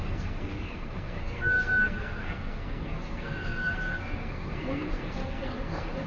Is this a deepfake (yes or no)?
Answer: yes